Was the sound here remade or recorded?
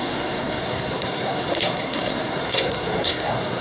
remade